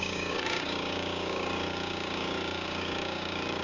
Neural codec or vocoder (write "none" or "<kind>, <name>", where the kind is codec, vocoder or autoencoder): codec, DAC